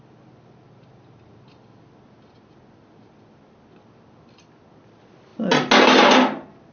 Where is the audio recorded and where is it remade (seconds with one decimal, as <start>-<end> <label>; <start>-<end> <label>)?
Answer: 0.0-6.7 recorded